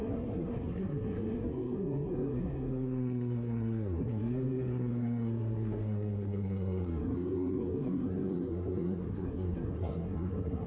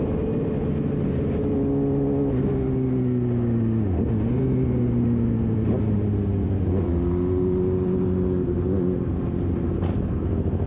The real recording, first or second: second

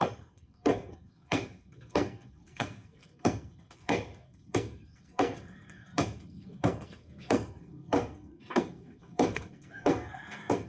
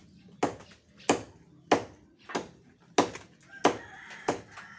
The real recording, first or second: second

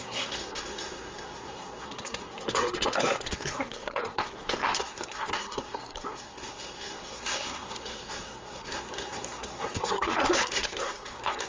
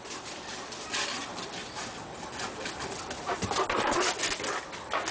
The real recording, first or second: second